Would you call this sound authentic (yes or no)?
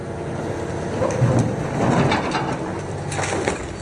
yes